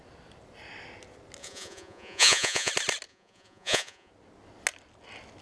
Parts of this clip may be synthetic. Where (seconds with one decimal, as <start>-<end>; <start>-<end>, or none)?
1.4-2.7; 3.1-4.1